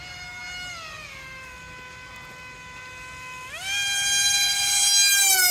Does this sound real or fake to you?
real